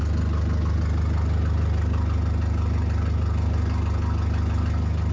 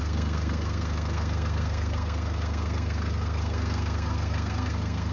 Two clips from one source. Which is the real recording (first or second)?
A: first